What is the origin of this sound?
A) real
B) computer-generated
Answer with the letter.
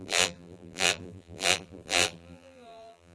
B